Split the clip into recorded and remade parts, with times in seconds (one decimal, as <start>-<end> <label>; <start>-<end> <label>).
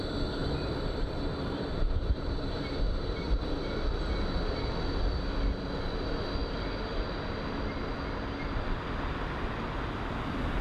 0.0-0.4 recorded; 0.4-3.6 remade; 3.6-10.6 recorded